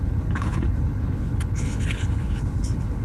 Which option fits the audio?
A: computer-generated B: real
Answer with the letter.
A